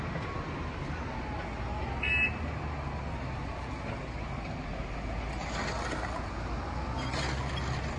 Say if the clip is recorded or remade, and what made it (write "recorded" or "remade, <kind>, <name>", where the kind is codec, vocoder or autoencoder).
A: recorded